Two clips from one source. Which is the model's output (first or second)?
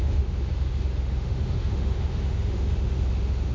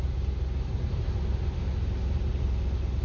first